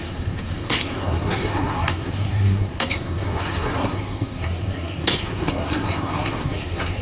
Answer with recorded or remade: remade